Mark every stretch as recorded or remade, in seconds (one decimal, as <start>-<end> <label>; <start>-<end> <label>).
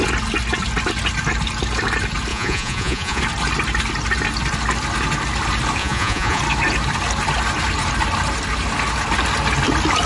0.0-2.3 recorded; 2.3-3.2 remade; 3.2-5.8 recorded; 5.8-6.4 remade; 6.4-10.1 recorded